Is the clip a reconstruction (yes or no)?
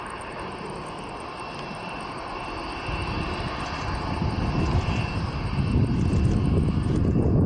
no